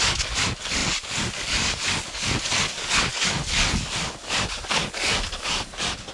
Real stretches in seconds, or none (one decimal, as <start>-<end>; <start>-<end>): none